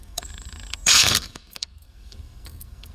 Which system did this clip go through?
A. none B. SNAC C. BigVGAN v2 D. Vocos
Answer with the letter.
B